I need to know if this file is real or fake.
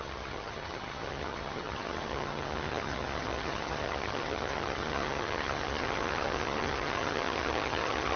fake